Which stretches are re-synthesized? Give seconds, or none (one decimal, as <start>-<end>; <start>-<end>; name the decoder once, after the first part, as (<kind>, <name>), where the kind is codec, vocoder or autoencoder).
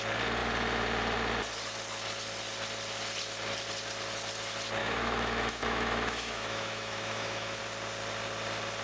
4.8-7.6 (autoencoder, DAC-VAE)